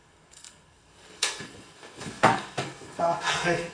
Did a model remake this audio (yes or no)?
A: yes